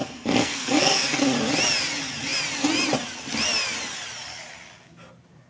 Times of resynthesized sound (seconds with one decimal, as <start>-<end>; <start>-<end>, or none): 0.0-1.2